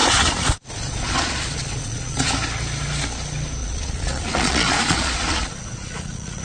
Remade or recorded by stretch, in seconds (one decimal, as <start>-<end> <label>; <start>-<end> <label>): 0.0-2.3 remade; 2.3-3.6 recorded; 3.6-6.4 remade